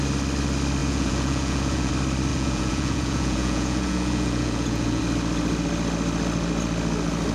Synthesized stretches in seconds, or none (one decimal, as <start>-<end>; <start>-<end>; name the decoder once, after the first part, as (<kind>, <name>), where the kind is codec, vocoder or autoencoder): 0.8-1.9 (vocoder, Vocos); 2.3-5.0